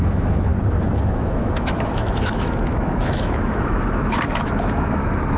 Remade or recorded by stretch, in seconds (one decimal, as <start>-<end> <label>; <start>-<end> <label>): 0.0-0.5 remade; 0.5-1.0 recorded; 1.0-5.4 remade